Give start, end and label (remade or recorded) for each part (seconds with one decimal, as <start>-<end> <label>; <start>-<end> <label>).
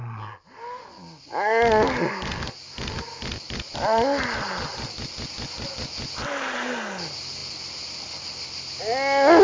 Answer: 0.0-9.4 recorded